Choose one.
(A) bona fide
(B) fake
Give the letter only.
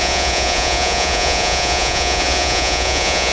B